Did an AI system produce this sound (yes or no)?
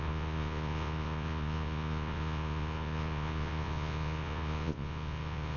yes